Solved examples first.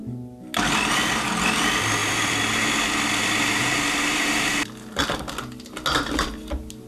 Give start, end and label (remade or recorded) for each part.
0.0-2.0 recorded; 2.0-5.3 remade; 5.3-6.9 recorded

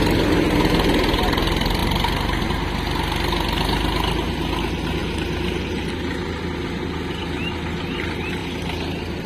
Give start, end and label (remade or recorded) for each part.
0.0-9.3 recorded